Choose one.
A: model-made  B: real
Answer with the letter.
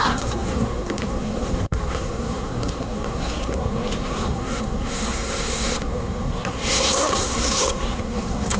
A